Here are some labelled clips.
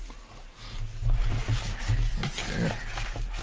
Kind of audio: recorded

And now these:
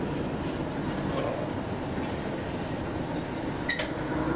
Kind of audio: recorded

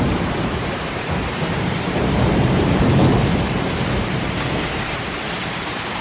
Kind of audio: remade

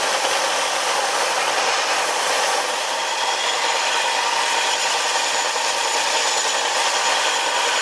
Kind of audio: recorded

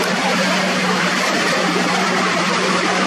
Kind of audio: remade